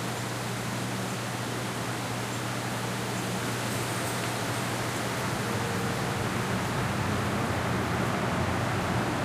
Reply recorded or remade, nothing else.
recorded